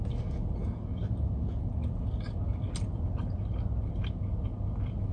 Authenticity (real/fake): real